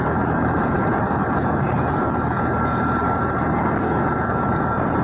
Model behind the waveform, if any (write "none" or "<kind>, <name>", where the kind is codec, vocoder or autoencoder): none